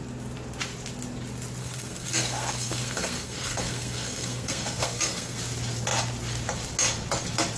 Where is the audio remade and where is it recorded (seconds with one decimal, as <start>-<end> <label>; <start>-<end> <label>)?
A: 0.0-1.6 recorded; 1.6-5.4 remade; 5.4-7.6 recorded